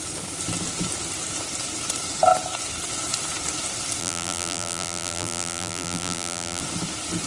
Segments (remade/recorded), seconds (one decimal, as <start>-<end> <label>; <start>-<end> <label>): 0.0-4.0 recorded; 4.0-6.6 remade; 6.6-7.3 recorded

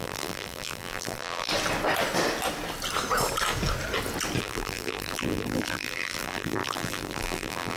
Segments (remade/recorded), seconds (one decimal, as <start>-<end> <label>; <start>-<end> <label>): 0.0-1.5 remade; 1.5-4.4 recorded; 4.4-7.8 remade

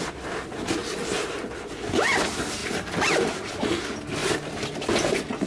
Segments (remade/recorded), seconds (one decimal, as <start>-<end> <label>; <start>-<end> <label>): 0.0-4.2 recorded; 4.2-4.7 remade; 4.7-5.5 recorded

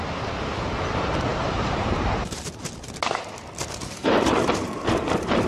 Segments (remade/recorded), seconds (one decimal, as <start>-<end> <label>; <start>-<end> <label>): 0.0-1.3 recorded; 1.3-2.4 remade; 2.4-4.0 recorded; 4.0-4.8 remade; 4.8-5.5 recorded

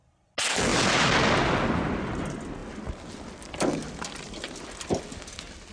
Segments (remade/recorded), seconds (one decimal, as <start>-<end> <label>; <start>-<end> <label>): 0.0-5.7 recorded

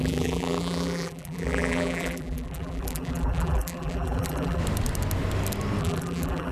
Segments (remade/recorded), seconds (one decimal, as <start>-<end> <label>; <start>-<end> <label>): 0.0-4.6 remade; 4.6-5.8 recorded; 5.8-6.5 remade

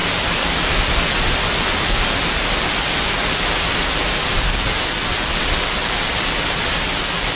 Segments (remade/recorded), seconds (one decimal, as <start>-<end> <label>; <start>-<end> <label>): 0.0-4.4 remade; 4.4-5.3 recorded; 5.3-6.8 remade; 6.8-7.4 recorded